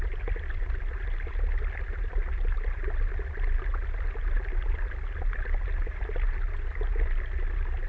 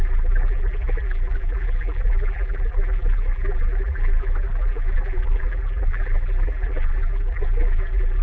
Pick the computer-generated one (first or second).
second